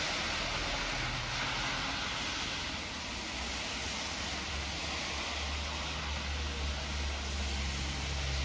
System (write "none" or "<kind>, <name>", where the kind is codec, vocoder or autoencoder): none